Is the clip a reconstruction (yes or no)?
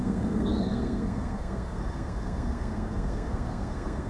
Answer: yes